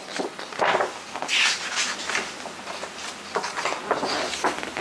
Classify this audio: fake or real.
real